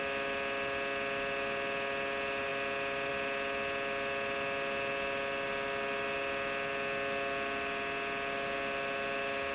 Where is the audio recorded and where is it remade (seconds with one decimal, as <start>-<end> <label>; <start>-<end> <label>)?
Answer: 0.0-9.5 recorded